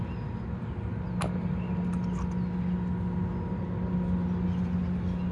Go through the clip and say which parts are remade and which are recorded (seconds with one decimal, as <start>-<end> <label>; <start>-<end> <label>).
0.0-5.3 recorded